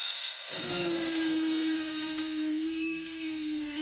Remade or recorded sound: remade